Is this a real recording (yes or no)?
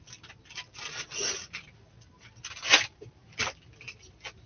yes